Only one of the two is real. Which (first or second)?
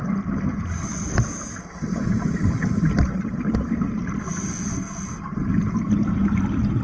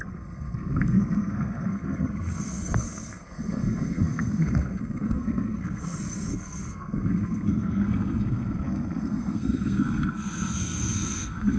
first